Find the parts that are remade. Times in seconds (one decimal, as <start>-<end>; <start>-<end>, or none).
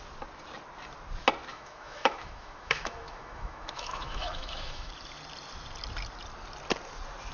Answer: 1.5-4.9